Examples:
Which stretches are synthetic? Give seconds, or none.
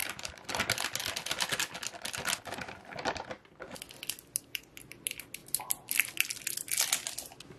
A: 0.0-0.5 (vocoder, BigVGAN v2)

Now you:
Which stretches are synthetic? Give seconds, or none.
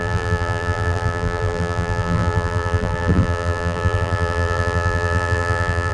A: 0.0-5.9 (vocoder, BigVGAN v2)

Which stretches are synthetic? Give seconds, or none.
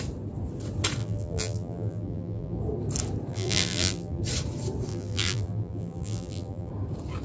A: 1.0-2.6 (vocoder, BigVGAN v2); 3.3-4.2; 4.9-6.7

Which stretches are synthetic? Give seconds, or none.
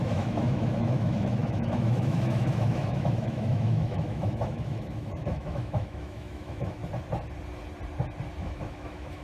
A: 0.0-6.8 (autoencoder, DAC-VAE); 8.4-9.2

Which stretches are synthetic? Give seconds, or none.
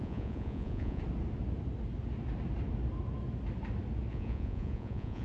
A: 0.0-1.0 (vocoder, Vocos); 4.1-5.2